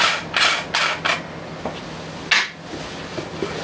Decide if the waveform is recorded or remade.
recorded